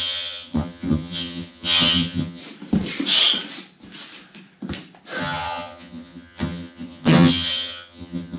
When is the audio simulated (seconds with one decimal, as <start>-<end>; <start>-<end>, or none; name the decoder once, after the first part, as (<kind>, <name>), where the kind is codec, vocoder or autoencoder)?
0.0-2.4 (vocoder, HiFi-GAN); 5.2-8.4